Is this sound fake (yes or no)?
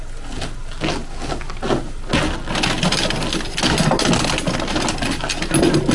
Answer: no